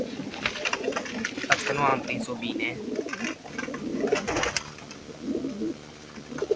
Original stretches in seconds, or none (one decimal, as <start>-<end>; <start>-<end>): 0.0-3.9; 4.5-6.6